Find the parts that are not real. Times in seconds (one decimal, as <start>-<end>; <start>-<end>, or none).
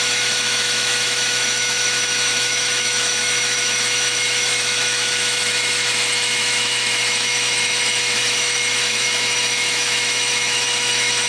0.0-11.3